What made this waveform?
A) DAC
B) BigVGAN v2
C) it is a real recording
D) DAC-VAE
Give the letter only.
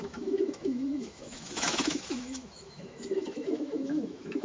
D